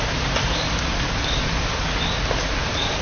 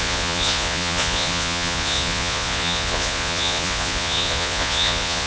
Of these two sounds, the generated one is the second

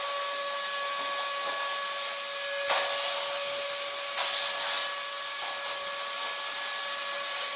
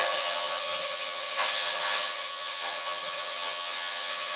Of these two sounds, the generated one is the second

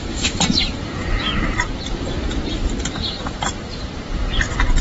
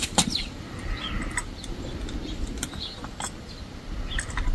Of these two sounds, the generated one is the first